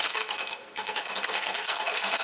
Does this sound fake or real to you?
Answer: fake